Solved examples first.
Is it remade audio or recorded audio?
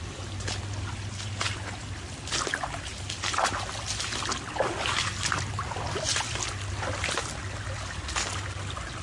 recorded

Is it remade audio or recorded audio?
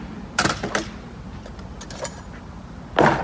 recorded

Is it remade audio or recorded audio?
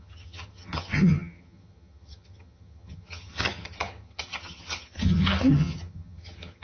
remade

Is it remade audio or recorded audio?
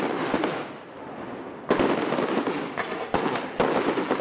recorded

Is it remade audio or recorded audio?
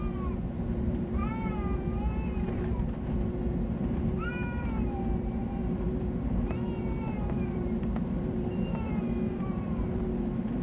remade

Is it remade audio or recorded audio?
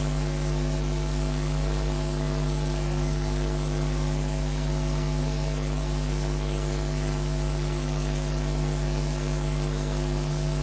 remade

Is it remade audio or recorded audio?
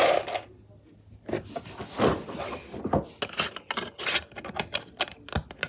recorded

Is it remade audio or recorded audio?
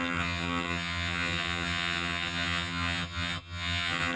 remade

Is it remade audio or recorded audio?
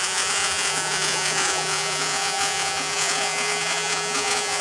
remade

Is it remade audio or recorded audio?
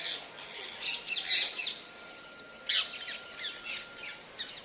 recorded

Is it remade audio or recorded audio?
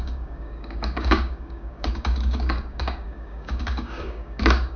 remade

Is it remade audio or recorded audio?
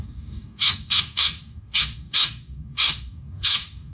remade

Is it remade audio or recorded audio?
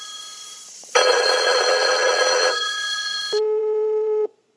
remade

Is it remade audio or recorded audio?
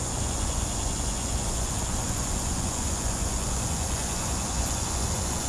remade